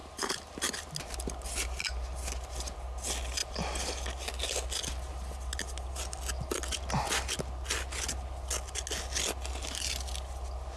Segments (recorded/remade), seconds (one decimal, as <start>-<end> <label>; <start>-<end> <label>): 0.0-10.8 recorded